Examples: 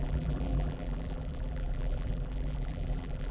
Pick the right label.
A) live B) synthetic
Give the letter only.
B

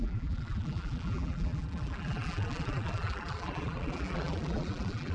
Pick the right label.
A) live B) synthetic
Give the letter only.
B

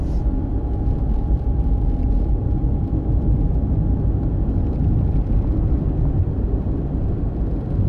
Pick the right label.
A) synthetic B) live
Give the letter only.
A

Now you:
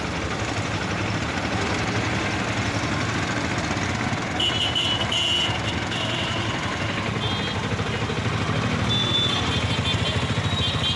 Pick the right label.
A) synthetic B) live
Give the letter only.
B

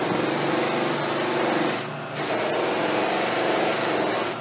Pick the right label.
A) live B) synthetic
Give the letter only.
A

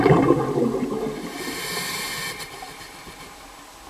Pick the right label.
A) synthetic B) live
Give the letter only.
B